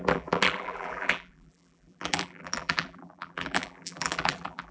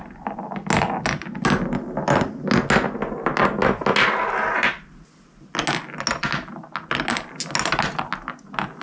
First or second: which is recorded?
second